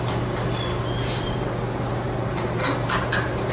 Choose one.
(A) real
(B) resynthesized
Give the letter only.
A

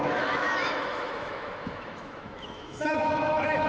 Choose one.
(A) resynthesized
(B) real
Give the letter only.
A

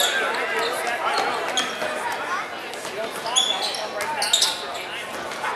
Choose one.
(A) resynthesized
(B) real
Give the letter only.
B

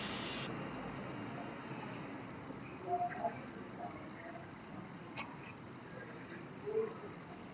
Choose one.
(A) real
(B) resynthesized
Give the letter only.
A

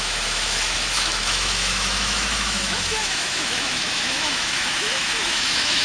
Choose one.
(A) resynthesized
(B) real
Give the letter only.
A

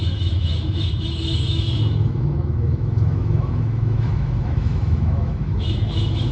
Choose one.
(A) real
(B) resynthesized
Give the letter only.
B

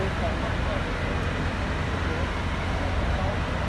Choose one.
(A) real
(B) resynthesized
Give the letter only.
A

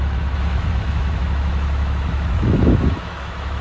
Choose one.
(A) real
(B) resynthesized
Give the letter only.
B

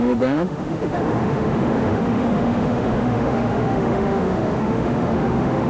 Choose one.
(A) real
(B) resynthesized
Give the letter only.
B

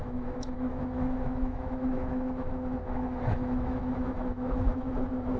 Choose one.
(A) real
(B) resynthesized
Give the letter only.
B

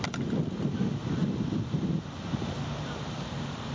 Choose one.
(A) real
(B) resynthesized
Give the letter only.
A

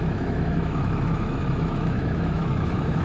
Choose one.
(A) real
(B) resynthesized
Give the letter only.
B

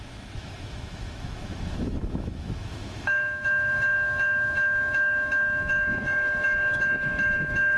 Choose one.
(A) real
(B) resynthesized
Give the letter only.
B